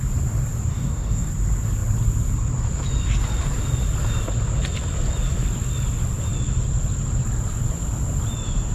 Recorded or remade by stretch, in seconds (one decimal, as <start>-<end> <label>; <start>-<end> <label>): 0.0-0.7 recorded; 0.7-1.3 remade; 1.3-8.7 recorded